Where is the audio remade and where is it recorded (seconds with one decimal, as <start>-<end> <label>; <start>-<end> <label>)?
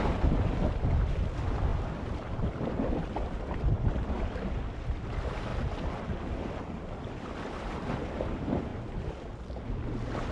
0.0-5.5 remade; 5.5-6.6 recorded; 6.6-8.7 remade; 8.7-9.3 recorded; 9.3-10.3 remade